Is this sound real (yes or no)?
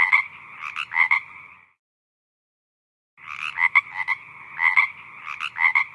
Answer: yes